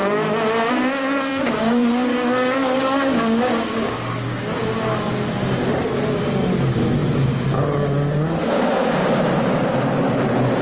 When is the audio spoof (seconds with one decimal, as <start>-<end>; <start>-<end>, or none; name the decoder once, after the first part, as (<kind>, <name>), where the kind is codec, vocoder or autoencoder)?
1.3-4.5 (codec, DAC); 8.4-9.6